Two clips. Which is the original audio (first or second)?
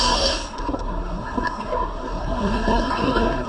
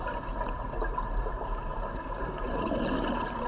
second